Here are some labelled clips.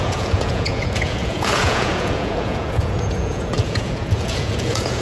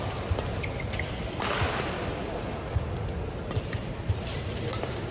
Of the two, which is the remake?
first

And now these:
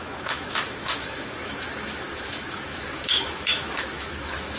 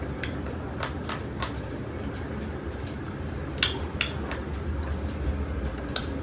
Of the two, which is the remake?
first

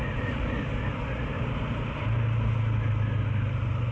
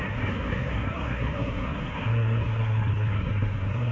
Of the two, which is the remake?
second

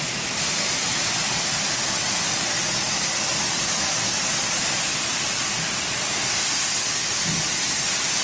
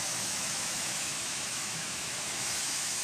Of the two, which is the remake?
second